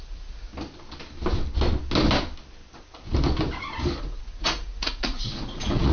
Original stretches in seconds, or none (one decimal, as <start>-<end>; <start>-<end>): 0.5-4.0